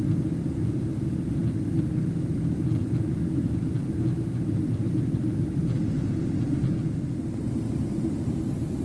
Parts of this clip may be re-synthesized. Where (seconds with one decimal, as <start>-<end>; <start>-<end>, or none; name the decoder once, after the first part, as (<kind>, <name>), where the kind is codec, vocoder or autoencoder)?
none